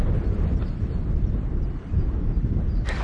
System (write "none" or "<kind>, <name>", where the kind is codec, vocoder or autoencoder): none